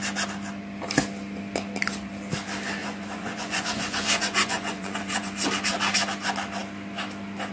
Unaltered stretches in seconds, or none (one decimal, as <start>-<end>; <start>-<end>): 0.0-2.8; 5.3-7.5